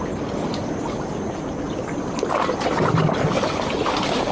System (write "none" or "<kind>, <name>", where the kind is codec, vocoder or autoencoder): none